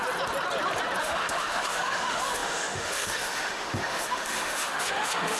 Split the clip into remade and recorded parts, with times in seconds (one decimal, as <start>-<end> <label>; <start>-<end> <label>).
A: 0.0-1.0 recorded; 1.0-5.4 remade